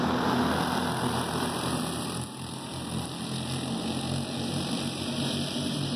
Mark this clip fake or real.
real